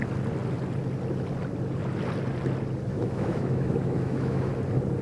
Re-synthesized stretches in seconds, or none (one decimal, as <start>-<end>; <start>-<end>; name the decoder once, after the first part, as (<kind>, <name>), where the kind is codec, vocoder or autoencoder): 2.9-4.5 (autoencoder, DAC-VAE)